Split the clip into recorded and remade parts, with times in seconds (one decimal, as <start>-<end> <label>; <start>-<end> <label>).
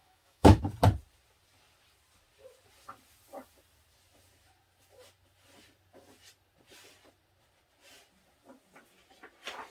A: 0.0-0.6 remade; 0.6-9.7 recorded